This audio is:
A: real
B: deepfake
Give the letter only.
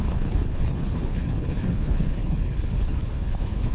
B